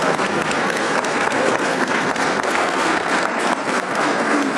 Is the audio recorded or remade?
remade